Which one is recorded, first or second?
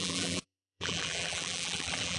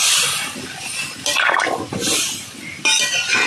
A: second